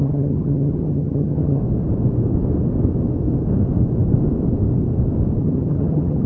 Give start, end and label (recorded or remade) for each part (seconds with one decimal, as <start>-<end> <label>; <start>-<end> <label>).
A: 0.0-1.6 remade; 1.6-5.4 recorded; 5.4-6.3 remade